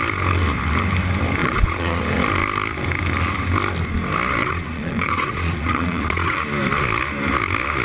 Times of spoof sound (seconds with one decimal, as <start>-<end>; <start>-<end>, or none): 1.4-2.0; 4.4-6.4